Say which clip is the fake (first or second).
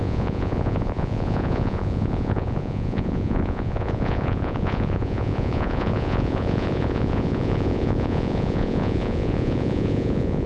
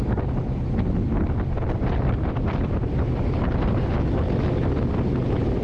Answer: first